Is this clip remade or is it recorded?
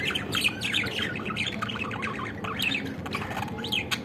recorded